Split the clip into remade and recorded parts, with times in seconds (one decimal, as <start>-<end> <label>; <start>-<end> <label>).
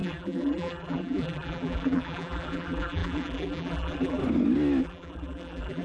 0.0-4.2 remade; 4.2-4.8 recorded; 4.8-5.8 remade